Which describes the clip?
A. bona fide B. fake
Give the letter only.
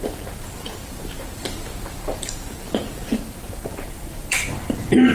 B